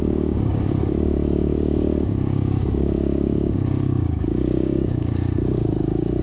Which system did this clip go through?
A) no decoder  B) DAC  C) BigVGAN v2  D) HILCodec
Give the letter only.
B